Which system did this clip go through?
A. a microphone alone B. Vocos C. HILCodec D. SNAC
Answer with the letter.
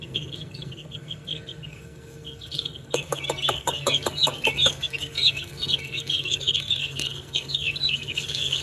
D